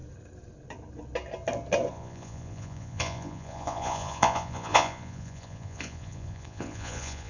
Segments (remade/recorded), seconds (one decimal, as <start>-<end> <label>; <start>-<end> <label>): 0.0-1.9 recorded; 1.9-7.3 remade